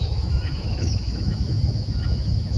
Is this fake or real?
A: fake